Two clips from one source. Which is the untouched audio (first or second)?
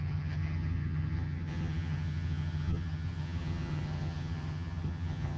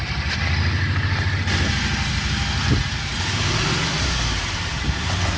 second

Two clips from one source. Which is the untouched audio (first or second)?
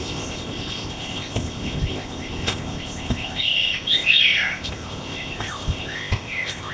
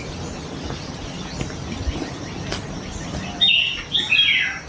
second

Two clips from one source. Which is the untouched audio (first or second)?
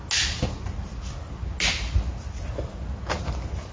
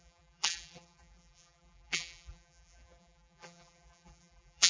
first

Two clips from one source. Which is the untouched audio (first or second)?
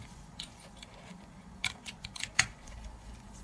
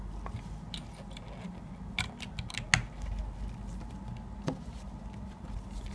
second